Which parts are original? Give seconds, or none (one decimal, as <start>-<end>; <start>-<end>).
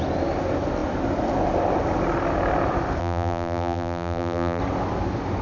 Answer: 0.0-3.0; 4.6-5.4